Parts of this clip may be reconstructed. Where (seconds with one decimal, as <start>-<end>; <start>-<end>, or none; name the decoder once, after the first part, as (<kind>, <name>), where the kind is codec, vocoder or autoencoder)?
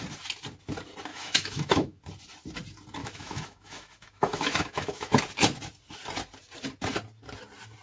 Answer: 1.1-2.0 (autoencoder, DAC-VAE); 3.0-5.2